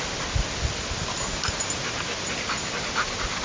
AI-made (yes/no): no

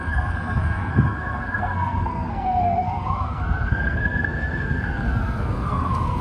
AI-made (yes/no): yes